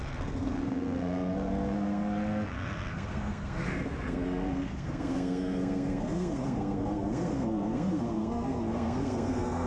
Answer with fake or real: fake